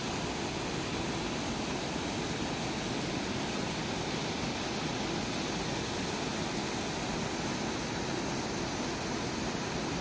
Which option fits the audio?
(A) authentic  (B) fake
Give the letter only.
A